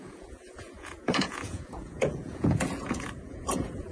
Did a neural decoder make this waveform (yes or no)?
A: yes